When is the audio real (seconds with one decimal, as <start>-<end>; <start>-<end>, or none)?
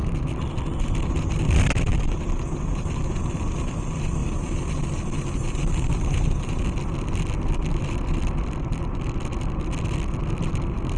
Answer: 1.9-2.7; 4.2-7.7